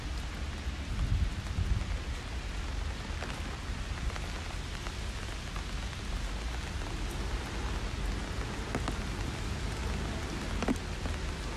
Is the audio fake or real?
real